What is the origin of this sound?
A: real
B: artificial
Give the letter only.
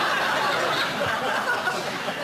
A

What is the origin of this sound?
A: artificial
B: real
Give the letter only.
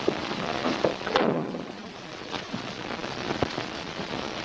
A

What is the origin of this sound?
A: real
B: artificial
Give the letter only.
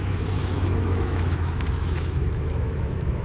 B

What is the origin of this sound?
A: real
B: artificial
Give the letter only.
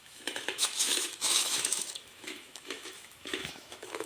B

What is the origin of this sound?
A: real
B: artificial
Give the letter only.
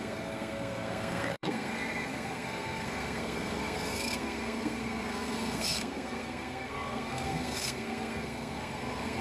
B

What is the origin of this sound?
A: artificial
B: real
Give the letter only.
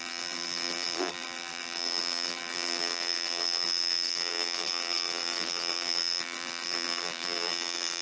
A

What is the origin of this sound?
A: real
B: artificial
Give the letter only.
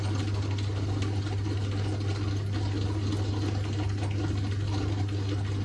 A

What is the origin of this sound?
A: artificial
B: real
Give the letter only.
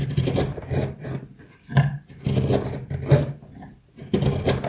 B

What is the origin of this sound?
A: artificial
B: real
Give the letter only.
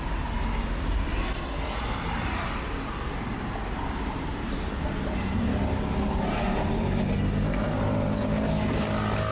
B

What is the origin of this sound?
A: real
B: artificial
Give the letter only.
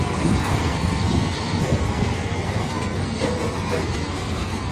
B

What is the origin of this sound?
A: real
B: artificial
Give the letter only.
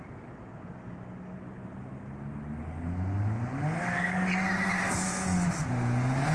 A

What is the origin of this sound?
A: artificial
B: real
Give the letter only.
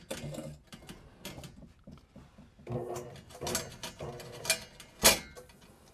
B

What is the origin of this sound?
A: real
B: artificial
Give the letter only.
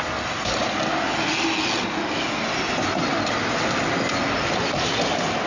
A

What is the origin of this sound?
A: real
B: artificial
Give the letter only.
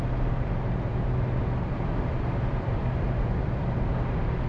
B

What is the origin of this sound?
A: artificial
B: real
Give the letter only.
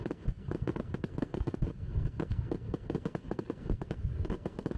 A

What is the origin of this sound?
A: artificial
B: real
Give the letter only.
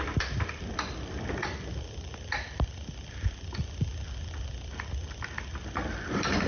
B